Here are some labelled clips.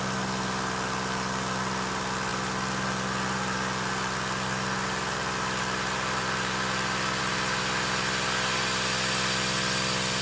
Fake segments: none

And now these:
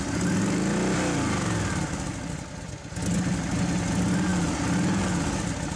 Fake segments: none

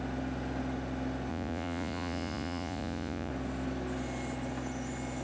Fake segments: 1.3-3.3

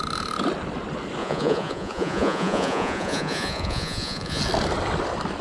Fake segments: 1.2-4.4